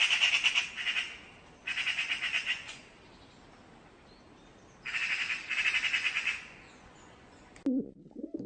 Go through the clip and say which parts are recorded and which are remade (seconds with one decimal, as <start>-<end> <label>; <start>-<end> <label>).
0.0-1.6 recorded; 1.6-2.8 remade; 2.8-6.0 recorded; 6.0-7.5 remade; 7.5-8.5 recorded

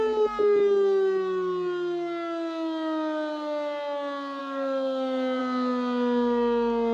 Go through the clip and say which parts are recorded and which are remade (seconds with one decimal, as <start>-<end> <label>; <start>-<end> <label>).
0.0-4.4 recorded; 4.4-5.4 remade; 5.4-6.9 recorded

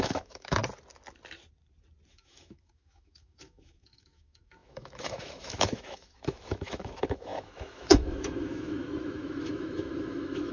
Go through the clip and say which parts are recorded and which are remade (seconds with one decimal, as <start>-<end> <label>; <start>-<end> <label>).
0.0-0.6 remade; 0.6-2.1 recorded; 2.1-10.5 remade

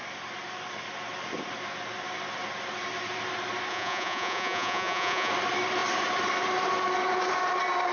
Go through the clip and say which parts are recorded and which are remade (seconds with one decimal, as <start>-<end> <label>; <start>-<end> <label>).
0.0-3.7 recorded; 3.7-5.3 remade; 5.3-7.9 recorded